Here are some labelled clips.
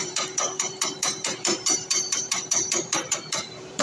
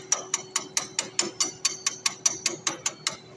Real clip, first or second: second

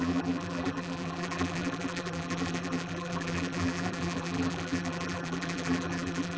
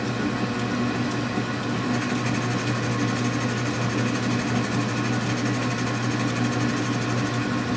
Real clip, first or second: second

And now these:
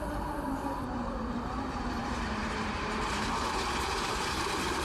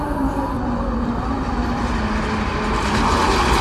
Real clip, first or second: second